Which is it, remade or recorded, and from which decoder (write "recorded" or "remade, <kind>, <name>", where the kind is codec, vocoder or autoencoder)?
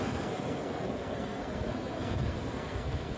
remade, codec, SNAC